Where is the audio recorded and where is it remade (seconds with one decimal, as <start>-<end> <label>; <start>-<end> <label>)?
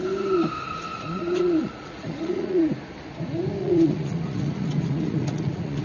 0.0-0.9 recorded; 0.9-2.7 remade; 2.7-3.6 recorded; 3.6-5.8 remade